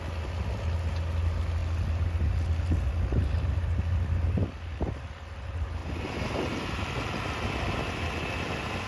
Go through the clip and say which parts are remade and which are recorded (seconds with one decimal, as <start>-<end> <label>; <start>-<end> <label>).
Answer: 0.0-8.9 recorded

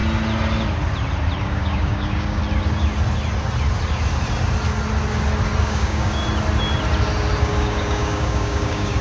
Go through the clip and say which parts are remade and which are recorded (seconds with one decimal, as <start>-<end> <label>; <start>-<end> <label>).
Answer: 0.0-1.4 recorded; 1.4-2.4 remade; 2.4-5.6 recorded; 5.6-6.2 remade; 6.2-7.4 recorded; 7.4-9.0 remade

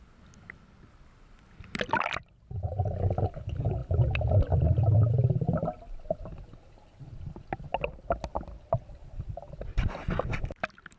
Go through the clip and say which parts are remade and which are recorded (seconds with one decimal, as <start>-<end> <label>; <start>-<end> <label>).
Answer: 0.0-11.0 recorded

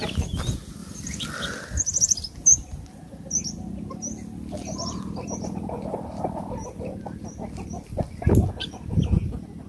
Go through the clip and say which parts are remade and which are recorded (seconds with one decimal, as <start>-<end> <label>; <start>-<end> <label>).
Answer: 0.0-9.7 recorded

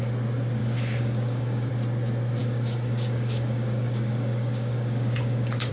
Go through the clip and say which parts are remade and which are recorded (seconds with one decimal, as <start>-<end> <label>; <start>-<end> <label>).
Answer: 0.0-0.6 recorded; 0.6-1.7 remade; 1.7-2.4 recorded; 2.4-5.7 remade

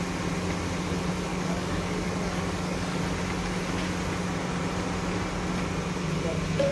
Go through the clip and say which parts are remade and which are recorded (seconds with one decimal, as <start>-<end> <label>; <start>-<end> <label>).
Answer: 0.0-1.3 recorded; 1.3-3.0 remade; 3.0-6.7 recorded